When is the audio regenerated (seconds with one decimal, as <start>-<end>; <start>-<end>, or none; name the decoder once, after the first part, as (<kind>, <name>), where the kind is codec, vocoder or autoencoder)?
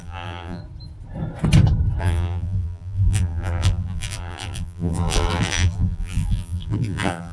0.0-0.6 (vocoder, BigVGAN v2); 2.0-7.3